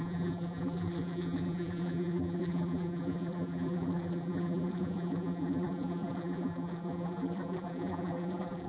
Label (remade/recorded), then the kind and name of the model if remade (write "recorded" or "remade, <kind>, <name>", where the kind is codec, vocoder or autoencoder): remade, vocoder, BigVGAN v2